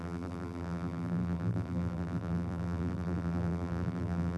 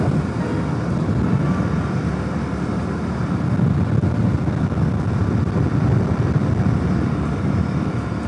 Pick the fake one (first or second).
first